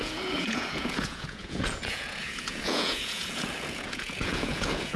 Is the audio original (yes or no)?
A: no